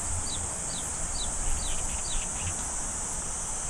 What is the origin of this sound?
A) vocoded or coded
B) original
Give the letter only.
B